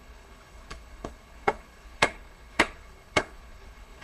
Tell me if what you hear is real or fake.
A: fake